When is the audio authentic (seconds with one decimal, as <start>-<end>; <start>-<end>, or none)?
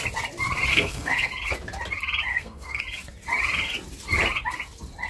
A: 0.0-0.7; 1.3-2.3; 2.8-5.1